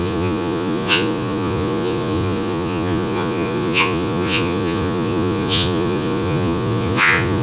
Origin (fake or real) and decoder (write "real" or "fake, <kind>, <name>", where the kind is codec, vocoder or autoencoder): fake, vocoder, Vocos